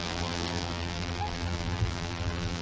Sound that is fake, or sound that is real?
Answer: fake